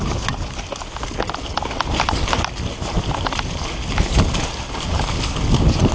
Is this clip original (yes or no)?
yes